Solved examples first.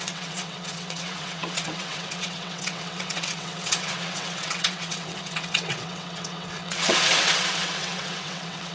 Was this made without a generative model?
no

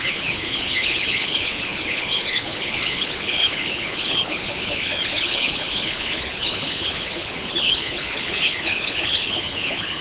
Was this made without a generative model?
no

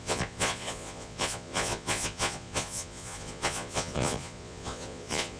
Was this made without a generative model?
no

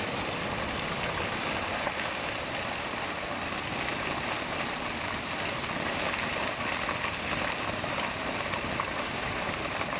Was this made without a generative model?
yes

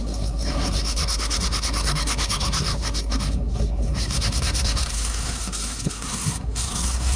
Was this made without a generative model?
no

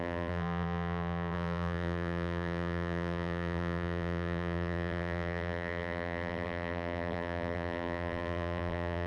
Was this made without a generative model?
no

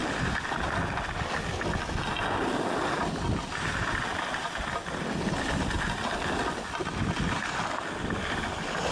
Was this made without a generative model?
yes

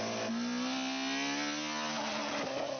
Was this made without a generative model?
yes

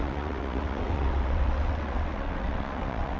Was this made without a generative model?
no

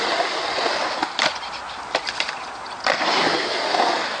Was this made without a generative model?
yes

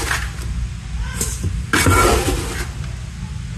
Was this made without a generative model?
yes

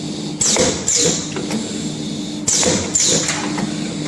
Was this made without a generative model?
yes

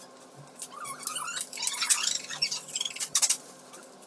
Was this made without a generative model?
yes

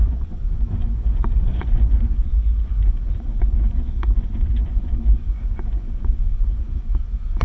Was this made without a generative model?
no